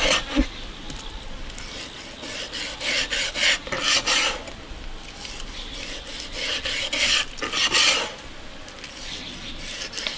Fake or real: real